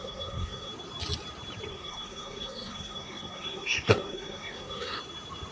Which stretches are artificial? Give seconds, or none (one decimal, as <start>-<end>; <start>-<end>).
0.0-0.7; 1.7-5.0